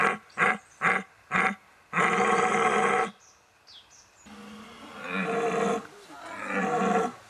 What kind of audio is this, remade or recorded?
recorded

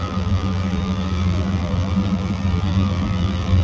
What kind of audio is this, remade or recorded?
remade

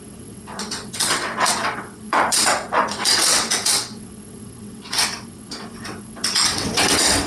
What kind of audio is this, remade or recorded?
remade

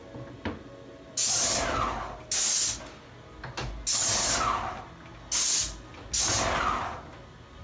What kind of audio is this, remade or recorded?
recorded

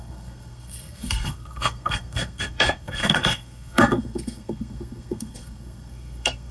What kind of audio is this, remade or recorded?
remade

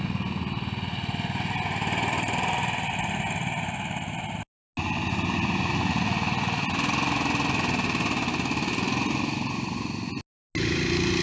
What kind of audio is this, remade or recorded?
recorded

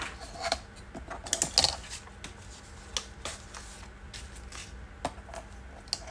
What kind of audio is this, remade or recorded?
recorded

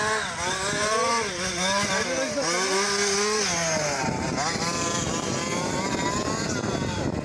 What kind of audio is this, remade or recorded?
recorded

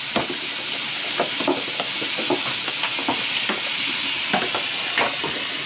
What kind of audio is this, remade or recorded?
recorded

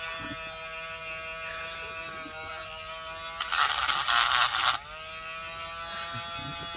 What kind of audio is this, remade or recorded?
recorded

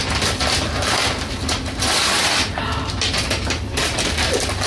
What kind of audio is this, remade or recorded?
recorded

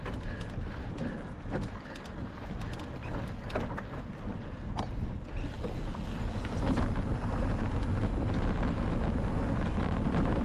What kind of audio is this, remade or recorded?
recorded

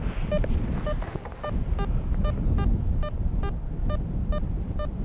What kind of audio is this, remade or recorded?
recorded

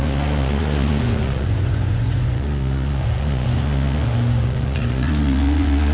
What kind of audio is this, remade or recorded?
remade